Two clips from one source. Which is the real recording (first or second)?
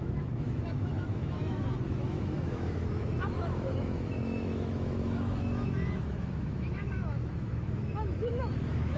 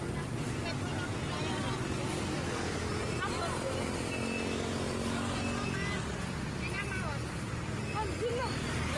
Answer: second